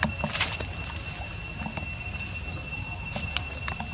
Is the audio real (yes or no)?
yes